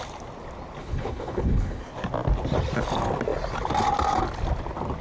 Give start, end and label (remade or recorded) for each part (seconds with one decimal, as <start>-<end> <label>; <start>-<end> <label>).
0.0-0.8 recorded; 0.8-1.8 remade; 1.8-5.0 recorded